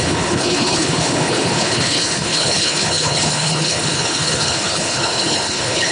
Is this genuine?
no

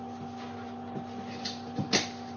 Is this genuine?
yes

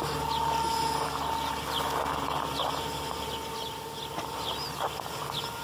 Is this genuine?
yes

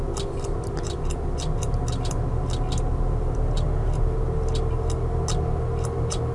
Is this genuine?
yes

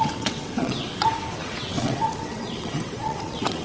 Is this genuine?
no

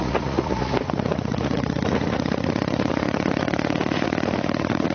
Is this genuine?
no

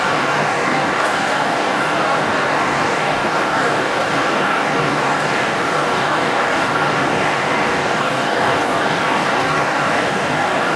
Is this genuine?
no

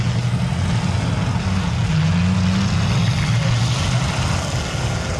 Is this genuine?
yes